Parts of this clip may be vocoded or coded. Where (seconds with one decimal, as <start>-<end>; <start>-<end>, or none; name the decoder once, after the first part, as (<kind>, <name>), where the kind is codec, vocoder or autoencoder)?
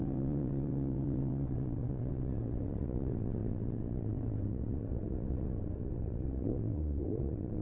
0.0-7.6 (vocoder, WaveNeXt)